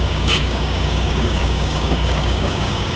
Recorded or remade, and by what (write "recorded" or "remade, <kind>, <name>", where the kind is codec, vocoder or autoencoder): remade, codec, DAC